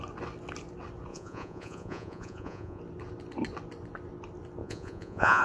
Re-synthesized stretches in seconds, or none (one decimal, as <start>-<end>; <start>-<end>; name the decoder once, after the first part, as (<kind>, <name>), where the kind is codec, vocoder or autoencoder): 1.1-2.8 (vocoder, Vocos); 4.6-5.4